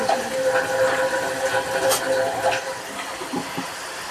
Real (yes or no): no